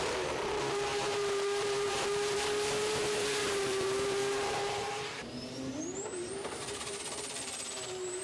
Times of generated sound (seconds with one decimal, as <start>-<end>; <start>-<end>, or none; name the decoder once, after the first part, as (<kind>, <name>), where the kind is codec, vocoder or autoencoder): 0.0-8.2 (vocoder, BigVGAN v2)